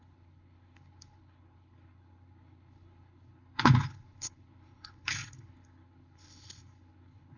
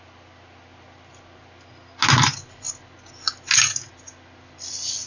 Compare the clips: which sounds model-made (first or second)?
first